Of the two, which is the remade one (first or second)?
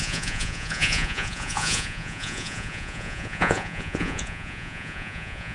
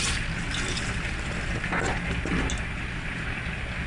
first